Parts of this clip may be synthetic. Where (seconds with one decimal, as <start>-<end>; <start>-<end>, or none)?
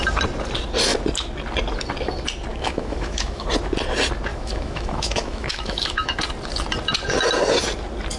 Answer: 2.5-3.5; 4.3-6.2